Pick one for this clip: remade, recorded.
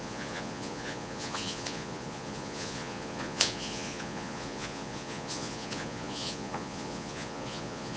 remade